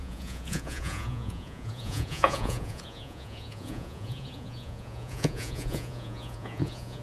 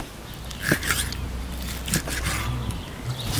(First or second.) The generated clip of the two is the first